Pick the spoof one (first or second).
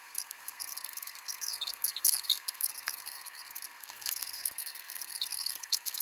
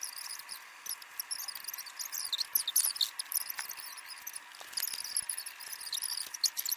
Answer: first